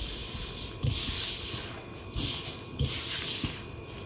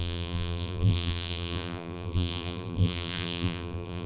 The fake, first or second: second